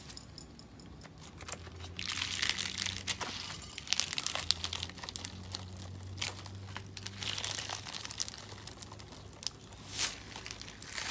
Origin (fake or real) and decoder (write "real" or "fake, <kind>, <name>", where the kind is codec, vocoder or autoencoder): real